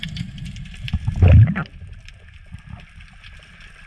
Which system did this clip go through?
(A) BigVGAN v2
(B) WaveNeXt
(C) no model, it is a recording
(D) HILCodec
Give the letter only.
C